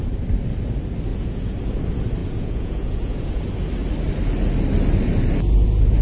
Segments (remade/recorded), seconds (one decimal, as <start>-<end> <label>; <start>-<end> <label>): 0.0-1.1 recorded; 1.1-1.6 remade; 1.6-2.2 recorded; 2.2-3.4 remade; 3.4-6.0 recorded